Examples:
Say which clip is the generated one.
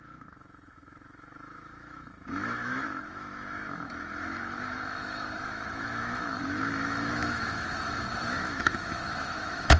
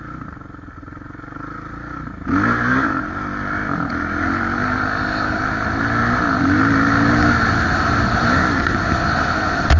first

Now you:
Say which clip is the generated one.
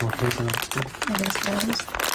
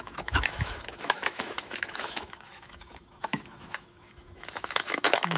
second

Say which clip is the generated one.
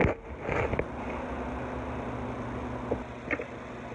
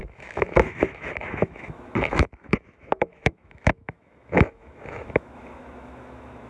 second